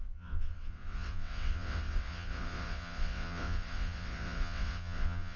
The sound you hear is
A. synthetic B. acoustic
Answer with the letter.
A